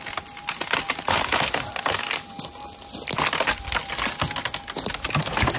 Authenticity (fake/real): real